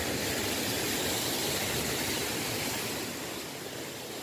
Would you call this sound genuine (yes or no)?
yes